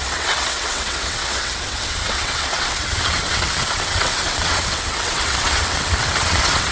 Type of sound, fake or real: fake